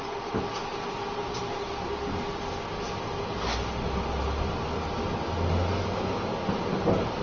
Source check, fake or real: real